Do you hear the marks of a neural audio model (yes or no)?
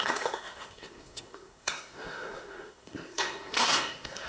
yes